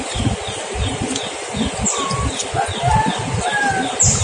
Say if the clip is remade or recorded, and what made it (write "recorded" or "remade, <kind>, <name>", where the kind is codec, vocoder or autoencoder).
recorded